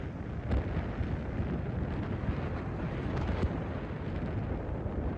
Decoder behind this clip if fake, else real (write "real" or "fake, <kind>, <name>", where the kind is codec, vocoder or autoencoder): real